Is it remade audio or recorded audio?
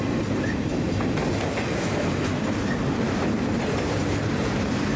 recorded